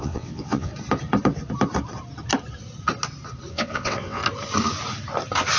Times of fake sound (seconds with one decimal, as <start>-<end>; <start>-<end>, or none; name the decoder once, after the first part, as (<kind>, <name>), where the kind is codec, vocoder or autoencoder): 0.0-0.7 (vocoder, WaveNeXt); 3.5-4.2